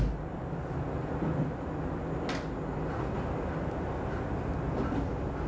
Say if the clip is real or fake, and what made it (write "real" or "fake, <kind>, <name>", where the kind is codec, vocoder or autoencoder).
real